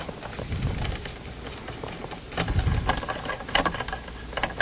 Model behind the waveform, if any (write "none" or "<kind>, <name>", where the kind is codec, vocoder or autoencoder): none